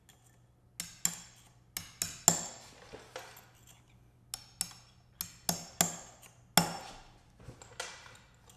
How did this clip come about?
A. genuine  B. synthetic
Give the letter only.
A